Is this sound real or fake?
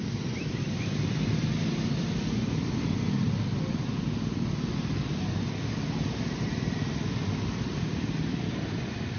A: real